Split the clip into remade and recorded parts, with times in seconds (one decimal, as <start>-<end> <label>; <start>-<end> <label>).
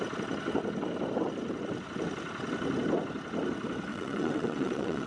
0.0-3.9 recorded; 3.9-5.1 remade